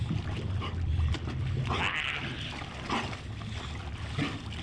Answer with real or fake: real